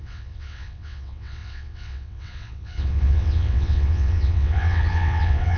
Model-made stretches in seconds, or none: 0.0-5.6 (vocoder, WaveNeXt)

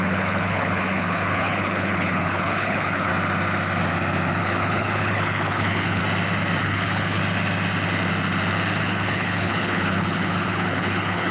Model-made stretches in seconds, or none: 0.0-3.1 (codec, HILCodec); 4.4-6.0; 6.6-7.2; 8.8-11.3

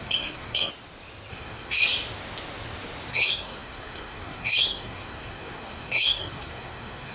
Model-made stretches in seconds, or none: 0.0-0.7 (codec, SNAC); 1.3-1.8; 3.1-7.1

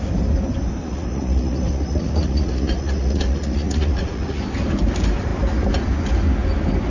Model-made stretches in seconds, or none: 0.8-4.4 (vocoder, Vocos)

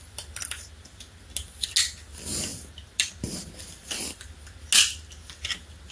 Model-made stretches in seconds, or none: none

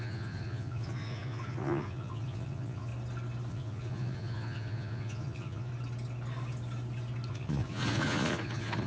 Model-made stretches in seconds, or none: 0.0-2.9 (vocoder, Vocos); 3.5-5.7; 7.3-8.9